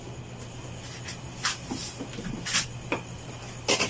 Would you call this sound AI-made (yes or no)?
no